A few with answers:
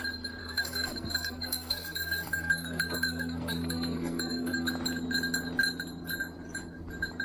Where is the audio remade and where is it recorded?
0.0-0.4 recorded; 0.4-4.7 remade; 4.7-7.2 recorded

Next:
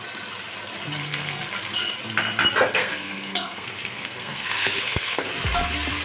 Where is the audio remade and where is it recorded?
0.0-1.0 recorded; 1.0-1.5 remade; 1.5-2.7 recorded; 2.7-5.3 remade; 5.3-6.0 recorded

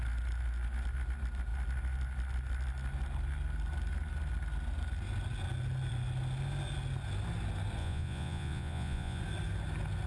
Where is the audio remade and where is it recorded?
0.0-7.8 recorded; 7.8-9.2 remade; 9.2-10.1 recorded

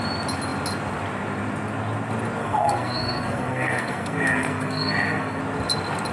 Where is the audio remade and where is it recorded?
0.0-2.4 recorded; 2.4-5.4 remade; 5.4-6.1 recorded

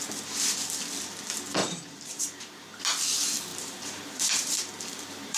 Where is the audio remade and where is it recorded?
0.0-1.6 recorded; 1.6-2.8 remade; 2.8-3.5 recorded; 3.5-5.4 remade

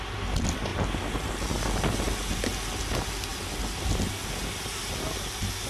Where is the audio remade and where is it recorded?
0.0-5.7 recorded